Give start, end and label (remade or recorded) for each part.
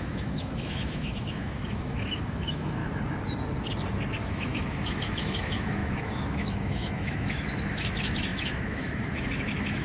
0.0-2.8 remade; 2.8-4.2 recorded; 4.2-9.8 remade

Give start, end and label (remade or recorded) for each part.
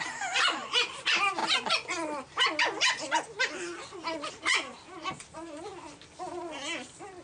0.0-1.4 remade; 1.4-4.3 recorded; 4.3-5.7 remade; 5.7-7.2 recorded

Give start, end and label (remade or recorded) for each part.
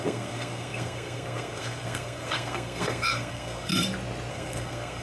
0.0-3.7 remade; 3.7-4.3 recorded; 4.3-5.0 remade